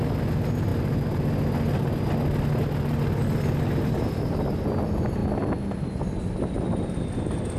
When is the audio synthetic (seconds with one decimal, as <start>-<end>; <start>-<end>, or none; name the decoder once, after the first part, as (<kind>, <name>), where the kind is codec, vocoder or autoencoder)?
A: none